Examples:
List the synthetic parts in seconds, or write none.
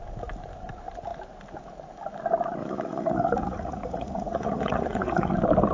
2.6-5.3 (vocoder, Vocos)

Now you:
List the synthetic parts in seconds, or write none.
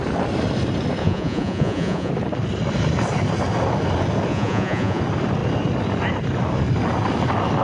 1.0-2.1 (vocoder, Vocos); 4.3-5.0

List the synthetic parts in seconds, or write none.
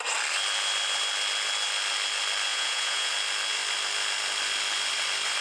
2.5-3.1 (vocoder, Vocos)